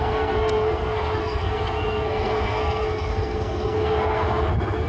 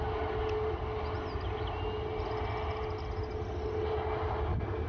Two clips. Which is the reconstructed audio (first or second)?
first